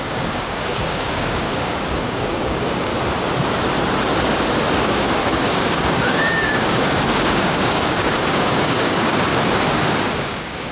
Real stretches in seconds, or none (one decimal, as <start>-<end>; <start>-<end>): 2.9-4.8; 9.3-10.1